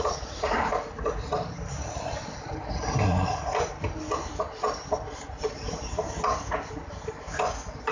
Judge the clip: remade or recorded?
recorded